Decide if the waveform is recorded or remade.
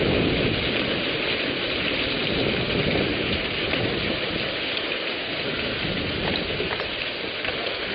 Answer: recorded